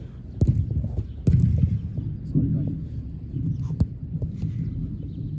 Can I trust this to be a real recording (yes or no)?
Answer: yes